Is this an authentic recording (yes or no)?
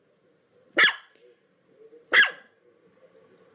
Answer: yes